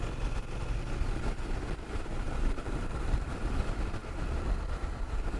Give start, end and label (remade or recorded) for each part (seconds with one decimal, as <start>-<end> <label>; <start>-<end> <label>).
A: 0.0-1.9 recorded; 1.9-3.3 remade; 3.3-5.4 recorded